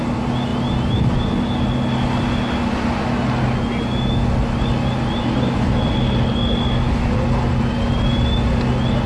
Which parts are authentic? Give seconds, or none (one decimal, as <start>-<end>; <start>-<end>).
0.0-9.1